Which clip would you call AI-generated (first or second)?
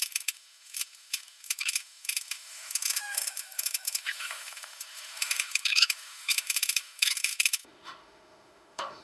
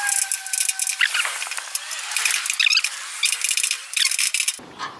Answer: first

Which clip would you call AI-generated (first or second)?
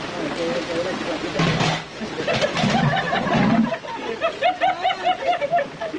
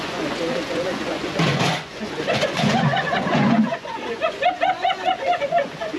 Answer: second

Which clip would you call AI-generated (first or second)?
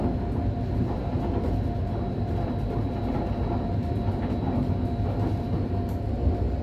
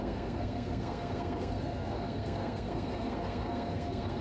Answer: second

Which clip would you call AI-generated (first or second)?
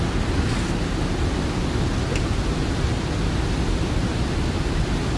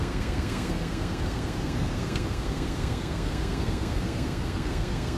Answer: second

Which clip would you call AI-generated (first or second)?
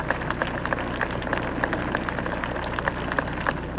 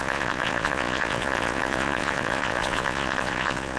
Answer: second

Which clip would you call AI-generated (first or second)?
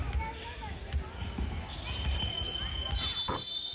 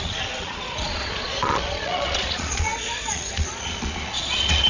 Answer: second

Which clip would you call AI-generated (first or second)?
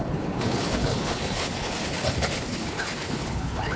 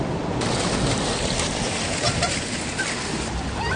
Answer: first